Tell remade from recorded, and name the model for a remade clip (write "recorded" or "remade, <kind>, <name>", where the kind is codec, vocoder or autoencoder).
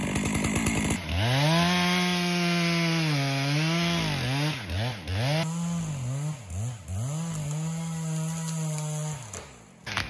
recorded